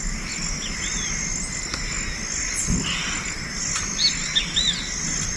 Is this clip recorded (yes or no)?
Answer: yes